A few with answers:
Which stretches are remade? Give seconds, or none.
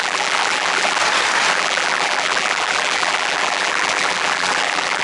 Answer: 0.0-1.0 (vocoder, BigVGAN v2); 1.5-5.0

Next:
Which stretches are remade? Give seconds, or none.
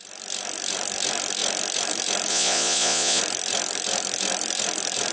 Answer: 2.3-3.2 (vocoder, Vocos)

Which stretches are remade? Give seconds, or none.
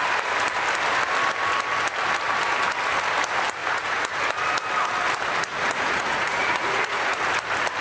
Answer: 3.6-4.2 (vocoder, Vocos); 5.5-7.2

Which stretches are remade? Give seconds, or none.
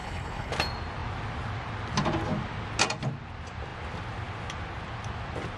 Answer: 0.0-0.5 (codec, HILCodec)